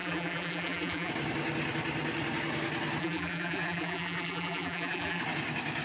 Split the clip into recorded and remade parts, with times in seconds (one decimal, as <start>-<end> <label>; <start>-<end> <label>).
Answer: 0.0-1.1 remade; 1.1-3.0 recorded; 3.0-5.2 remade; 5.2-5.8 recorded